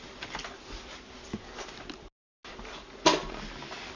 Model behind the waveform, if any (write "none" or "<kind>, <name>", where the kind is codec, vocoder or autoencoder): none